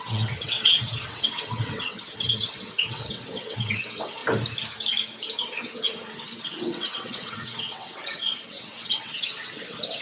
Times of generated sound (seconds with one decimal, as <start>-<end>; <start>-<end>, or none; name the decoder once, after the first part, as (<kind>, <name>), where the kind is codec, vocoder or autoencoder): 0.0-4.2 (vocoder, WaveNeXt); 6.0-10.0